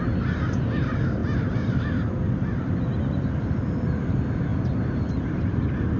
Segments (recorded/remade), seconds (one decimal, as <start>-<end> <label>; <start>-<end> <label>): 0.0-6.0 recorded